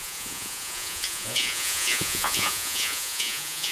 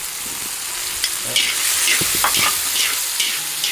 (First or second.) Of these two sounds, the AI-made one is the first